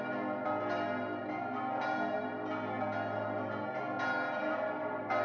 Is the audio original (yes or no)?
yes